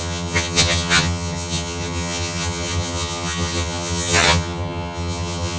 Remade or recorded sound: remade